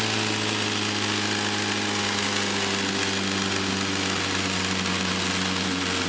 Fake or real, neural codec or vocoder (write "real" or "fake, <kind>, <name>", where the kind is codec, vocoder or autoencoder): real